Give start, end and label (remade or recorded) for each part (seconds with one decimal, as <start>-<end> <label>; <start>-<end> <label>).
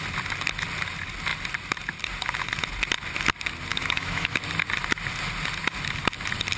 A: 0.0-3.7 recorded; 3.7-4.4 remade; 4.4-6.6 recorded